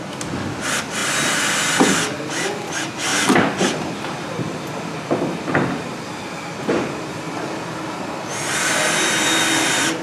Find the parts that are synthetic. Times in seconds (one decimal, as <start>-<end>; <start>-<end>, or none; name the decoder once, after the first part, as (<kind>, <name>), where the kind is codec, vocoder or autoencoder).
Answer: 3.1-7.9 (vocoder, BigVGAN v2)